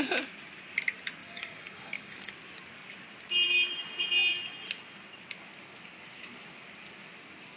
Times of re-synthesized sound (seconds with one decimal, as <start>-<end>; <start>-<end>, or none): 1.2-2.3